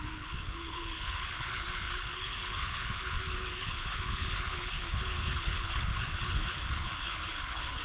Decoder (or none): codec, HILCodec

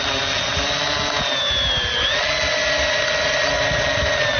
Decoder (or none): none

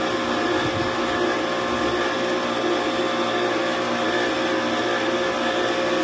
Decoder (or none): none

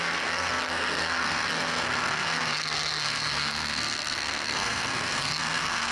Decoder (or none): codec, SNAC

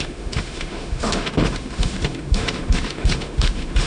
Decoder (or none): autoencoder, DAC-VAE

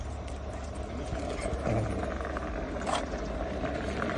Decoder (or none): none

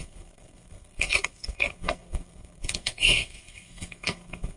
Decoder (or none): codec, SNAC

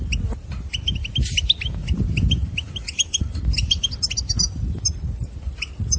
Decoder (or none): none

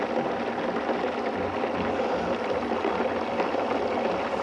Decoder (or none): none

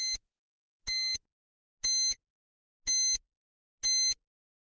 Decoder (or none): none